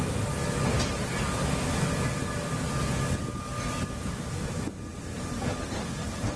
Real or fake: real